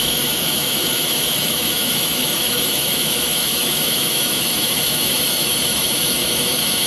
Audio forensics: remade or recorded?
remade